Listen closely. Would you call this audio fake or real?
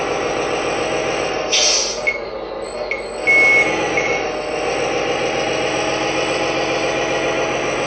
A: real